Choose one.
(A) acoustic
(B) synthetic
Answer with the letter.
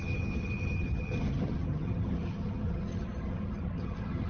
B